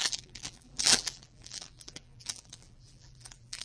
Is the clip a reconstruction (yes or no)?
yes